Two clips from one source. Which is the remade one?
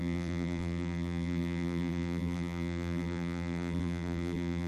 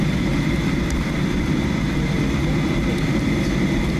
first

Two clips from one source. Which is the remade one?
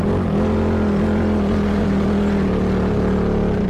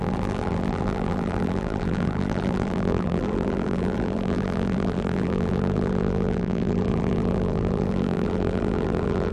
second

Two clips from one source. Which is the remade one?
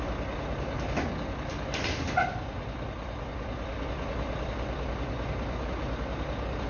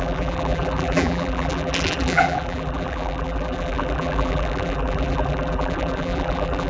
second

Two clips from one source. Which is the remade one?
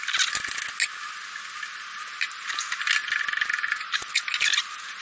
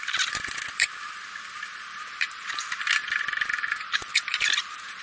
second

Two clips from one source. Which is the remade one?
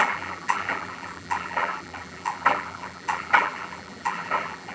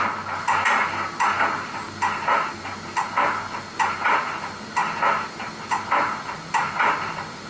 first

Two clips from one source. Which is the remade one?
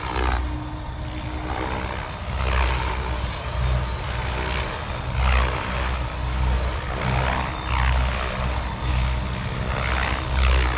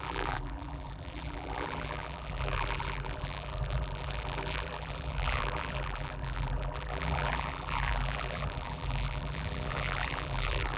second